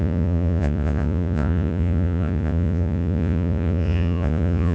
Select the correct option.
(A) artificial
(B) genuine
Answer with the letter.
A